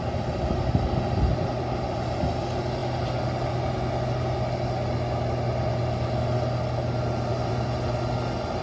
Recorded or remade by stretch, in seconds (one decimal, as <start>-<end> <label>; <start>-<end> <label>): 0.0-8.6 recorded